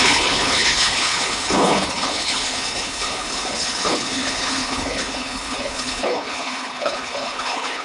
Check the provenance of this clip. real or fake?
fake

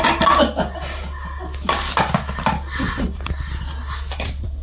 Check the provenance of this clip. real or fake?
real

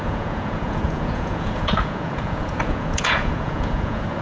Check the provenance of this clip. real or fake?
fake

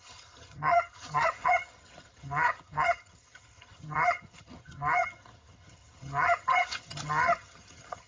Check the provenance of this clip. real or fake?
fake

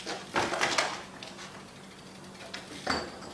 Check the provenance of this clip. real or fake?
real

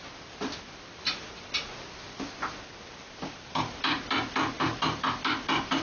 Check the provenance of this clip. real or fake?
real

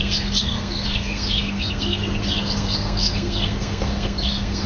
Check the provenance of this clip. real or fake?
fake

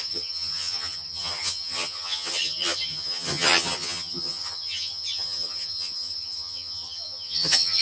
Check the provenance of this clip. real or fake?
fake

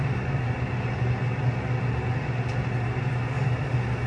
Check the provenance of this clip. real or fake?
real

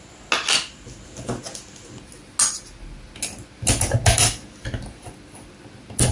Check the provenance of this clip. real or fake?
real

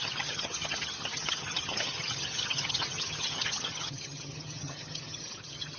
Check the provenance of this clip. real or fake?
fake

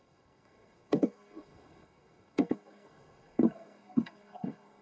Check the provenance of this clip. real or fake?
fake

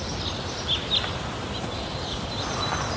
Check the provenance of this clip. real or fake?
real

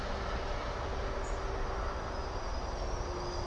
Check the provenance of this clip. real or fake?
real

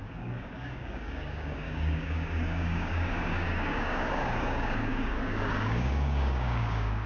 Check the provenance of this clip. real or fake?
fake